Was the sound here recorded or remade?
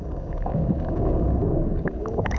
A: remade